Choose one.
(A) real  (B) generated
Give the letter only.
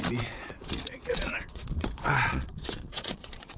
B